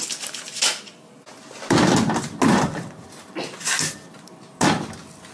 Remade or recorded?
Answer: recorded